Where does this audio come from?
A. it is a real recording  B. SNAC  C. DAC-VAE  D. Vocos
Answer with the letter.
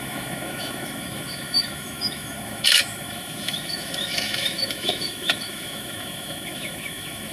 C